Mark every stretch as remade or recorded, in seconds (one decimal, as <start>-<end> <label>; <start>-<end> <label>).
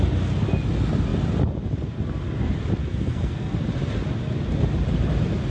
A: 0.0-2.8 recorded; 2.8-3.5 remade; 3.5-5.5 recorded